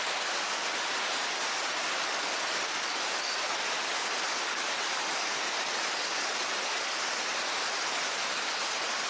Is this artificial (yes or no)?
no